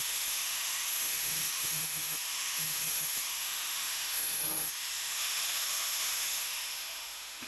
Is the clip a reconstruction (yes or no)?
yes